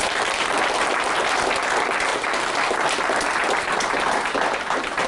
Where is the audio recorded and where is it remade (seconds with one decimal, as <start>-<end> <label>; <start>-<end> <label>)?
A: 0.0-1.6 remade; 1.6-2.1 recorded; 2.1-2.7 remade; 2.7-5.1 recorded